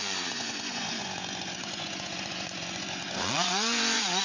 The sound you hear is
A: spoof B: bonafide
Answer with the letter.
A